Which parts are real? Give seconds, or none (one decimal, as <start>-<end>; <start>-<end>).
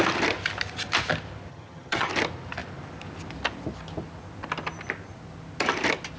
0.0-1.5; 2.1-6.2